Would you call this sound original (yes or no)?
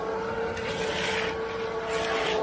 yes